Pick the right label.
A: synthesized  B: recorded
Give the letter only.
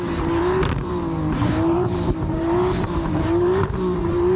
A